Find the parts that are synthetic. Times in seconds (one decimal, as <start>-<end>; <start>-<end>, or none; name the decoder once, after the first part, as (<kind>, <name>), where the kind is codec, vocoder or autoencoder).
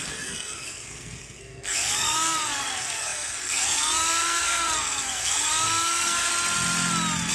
0.0-6.3 (codec, SNAC)